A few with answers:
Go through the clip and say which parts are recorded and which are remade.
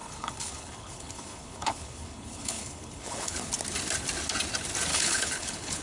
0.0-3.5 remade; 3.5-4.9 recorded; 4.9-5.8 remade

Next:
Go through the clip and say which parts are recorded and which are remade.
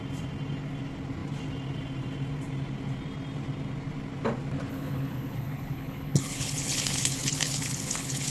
0.0-4.7 recorded; 4.7-8.3 remade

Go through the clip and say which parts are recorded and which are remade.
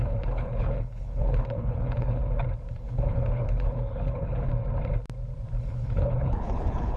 0.0-2.2 remade; 2.2-2.7 recorded; 2.7-4.5 remade; 4.5-5.6 recorded; 5.6-7.0 remade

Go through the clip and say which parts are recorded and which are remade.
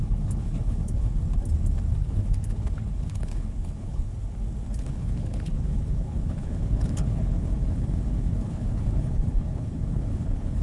0.0-1.2 remade; 1.2-2.0 recorded; 2.0-4.1 remade; 4.1-4.8 recorded; 4.8-10.6 remade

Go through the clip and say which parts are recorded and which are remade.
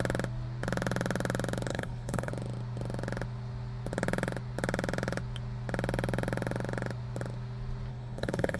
0.0-1.7 recorded; 1.7-2.3 remade; 2.3-7.9 recorded; 7.9-8.6 remade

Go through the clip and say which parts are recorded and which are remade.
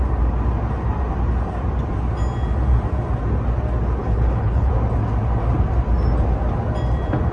0.0-4.0 recorded; 4.0-4.7 remade; 4.7-7.3 recorded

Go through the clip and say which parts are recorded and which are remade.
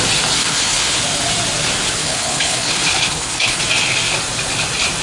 0.0-0.4 recorded; 0.4-1.0 remade; 1.0-2.0 recorded; 2.0-3.6 remade; 3.6-5.0 recorded